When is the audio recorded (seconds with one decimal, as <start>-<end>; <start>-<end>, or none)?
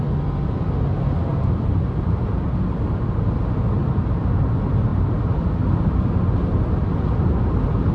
0.0-7.9